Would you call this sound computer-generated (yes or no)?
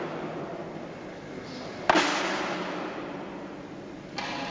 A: no